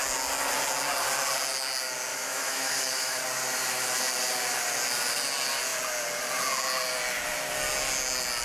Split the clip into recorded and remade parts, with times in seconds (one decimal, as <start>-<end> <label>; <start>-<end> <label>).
0.0-2.1 recorded; 2.1-3.2 remade; 3.2-8.4 recorded